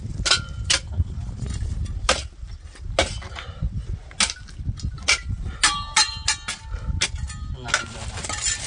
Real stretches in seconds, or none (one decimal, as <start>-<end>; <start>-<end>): 0.0-8.7